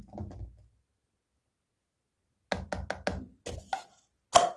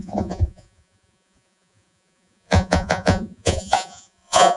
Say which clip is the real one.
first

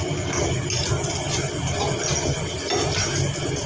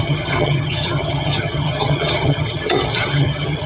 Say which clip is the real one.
first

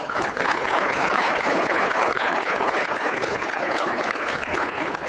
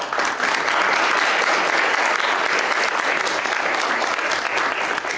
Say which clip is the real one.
second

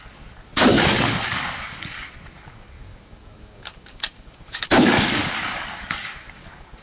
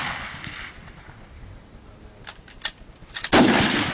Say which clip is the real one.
second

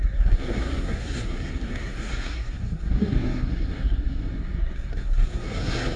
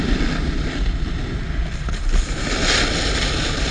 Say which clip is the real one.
second